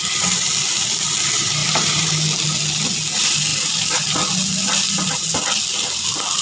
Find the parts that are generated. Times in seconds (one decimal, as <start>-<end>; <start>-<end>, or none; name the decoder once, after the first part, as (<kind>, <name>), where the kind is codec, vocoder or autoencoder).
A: 1.6-2.1 (vocoder, BigVGAN v2)